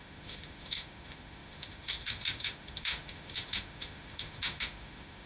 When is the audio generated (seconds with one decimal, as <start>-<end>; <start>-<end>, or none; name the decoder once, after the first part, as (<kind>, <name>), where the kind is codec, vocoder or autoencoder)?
0.0-5.3 (autoencoder, DAC-VAE)